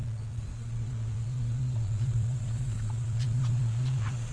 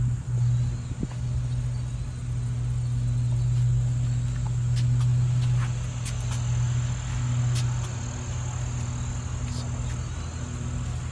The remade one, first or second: first